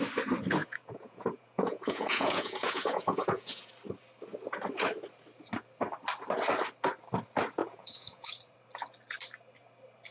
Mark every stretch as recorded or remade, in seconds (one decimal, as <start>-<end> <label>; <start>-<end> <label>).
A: 0.0-0.6 recorded; 0.6-3.7 remade; 3.7-7.6 recorded; 7.6-8.3 remade; 8.3-10.1 recorded